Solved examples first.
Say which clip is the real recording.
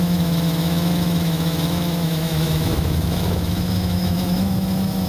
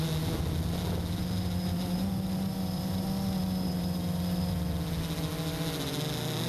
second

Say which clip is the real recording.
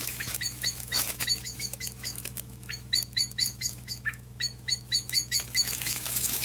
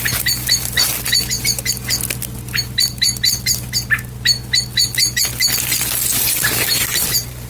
second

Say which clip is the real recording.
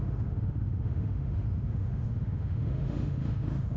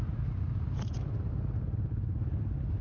second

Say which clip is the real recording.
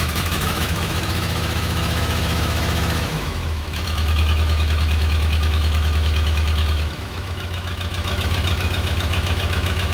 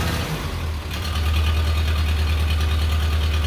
second